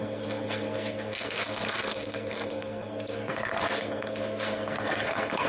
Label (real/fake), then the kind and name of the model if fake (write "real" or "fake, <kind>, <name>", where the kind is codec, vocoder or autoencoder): fake, codec, SNAC